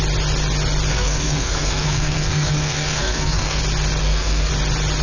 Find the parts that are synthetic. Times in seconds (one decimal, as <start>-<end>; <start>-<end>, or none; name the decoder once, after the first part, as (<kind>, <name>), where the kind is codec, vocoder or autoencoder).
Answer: 0.9-3.6 (codec, SNAC); 4.0-4.5